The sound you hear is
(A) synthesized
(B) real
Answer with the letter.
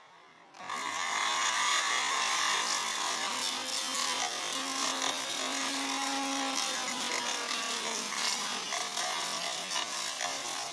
B